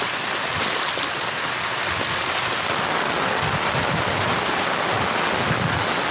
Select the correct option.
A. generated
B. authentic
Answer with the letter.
B